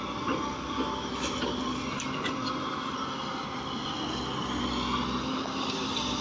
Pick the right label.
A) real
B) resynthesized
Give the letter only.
A